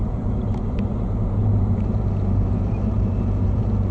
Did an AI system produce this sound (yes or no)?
yes